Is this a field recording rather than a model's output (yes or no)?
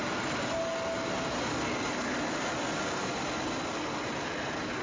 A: yes